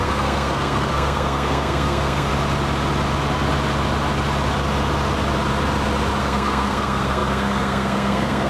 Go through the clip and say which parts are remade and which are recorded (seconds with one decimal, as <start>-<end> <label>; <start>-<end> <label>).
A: 0.0-2.3 remade; 2.3-6.2 recorded; 6.2-8.5 remade